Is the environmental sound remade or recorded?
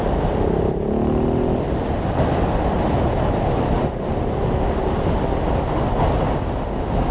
recorded